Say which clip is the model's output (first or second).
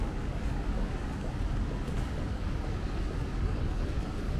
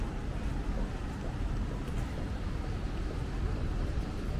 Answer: first